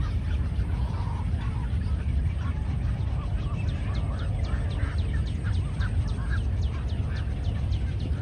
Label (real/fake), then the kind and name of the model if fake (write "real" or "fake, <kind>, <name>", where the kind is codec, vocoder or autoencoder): real